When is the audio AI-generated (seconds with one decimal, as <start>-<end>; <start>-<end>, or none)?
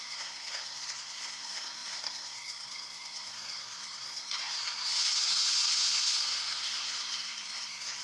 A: 0.0-8.0